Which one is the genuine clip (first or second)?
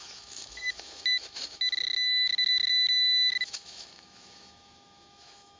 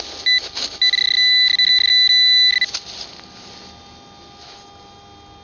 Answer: second